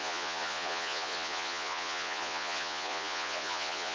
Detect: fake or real fake